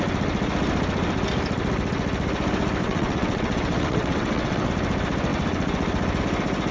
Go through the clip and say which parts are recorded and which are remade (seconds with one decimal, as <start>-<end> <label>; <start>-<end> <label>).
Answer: 0.0-2.8 recorded; 2.8-4.7 remade; 4.7-6.7 recorded